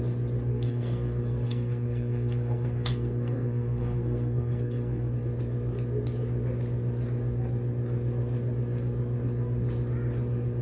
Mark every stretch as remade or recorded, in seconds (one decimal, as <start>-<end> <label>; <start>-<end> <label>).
0.0-0.5 recorded; 0.5-5.1 remade; 5.1-10.6 recorded